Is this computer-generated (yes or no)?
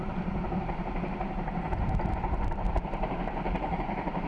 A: yes